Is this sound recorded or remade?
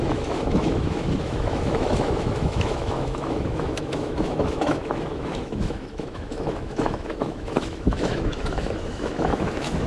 remade